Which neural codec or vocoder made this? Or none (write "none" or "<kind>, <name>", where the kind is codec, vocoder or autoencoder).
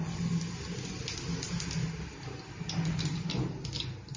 none